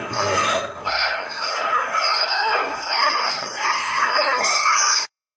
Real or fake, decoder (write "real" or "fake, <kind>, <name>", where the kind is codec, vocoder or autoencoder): fake, codec, SNAC